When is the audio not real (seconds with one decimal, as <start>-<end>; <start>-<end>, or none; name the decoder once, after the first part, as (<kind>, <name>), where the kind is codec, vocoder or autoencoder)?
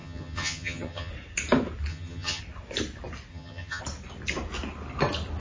0.0-1.1 (vocoder, HiFi-GAN); 1.9-2.4; 3.3-3.8